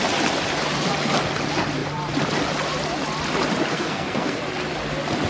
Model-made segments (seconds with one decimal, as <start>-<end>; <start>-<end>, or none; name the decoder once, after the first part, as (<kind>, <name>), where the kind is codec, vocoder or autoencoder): 3.7-4.4 (codec, SNAC)